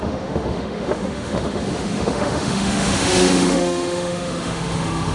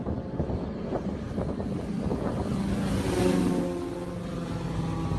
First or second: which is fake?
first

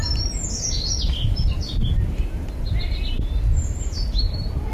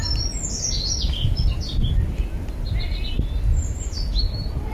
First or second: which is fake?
first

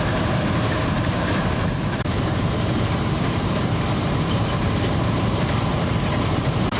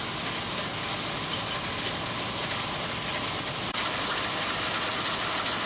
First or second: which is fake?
first